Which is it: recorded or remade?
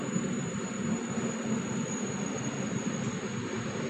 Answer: recorded